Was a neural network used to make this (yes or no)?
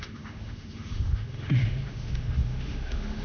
yes